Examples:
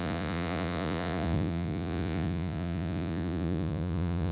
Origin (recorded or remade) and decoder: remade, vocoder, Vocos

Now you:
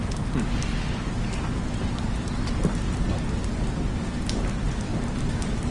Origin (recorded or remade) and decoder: recorded